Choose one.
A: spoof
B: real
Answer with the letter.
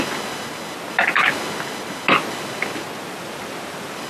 B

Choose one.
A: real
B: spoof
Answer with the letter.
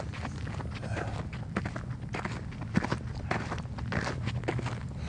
A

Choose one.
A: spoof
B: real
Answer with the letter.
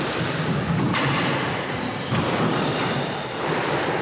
A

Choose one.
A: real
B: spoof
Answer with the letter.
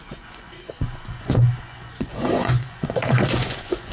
B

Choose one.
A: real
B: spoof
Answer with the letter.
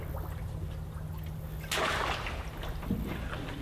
A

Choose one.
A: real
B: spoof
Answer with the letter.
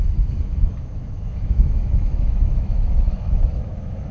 B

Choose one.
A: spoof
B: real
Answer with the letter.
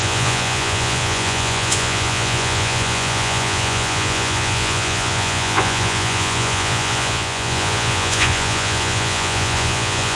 A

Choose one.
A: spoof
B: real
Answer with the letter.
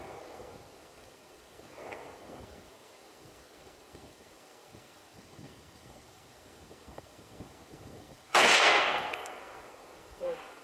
A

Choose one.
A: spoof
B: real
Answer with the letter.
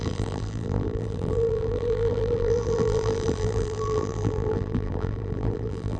A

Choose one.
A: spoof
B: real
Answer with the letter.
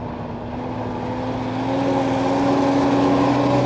B